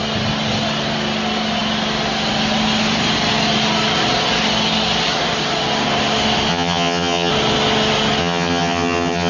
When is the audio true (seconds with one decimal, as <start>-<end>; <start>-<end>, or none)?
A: 0.0-6.5; 7.3-8.2